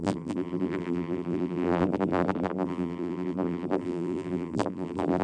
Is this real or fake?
fake